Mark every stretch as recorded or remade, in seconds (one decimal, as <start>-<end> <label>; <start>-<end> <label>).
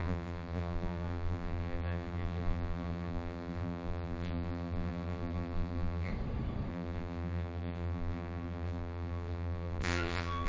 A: 0.0-6.1 remade; 6.1-6.7 recorded; 6.7-10.5 remade